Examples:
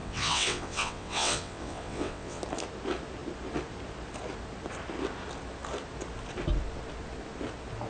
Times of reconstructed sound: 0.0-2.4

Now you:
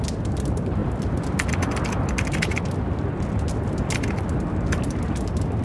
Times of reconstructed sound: none

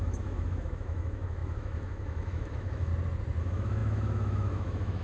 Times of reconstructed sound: 0.0-2.9; 3.4-5.0

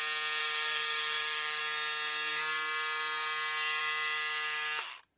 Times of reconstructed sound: 0.4-1.6

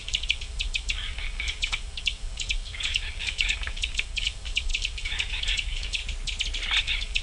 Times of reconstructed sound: 0.0-6.0; 6.8-7.2

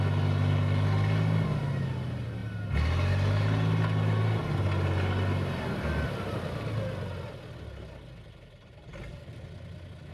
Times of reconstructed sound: none

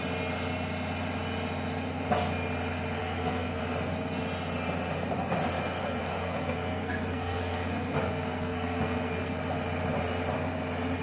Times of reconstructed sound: 3.0-3.6; 5.8-9.4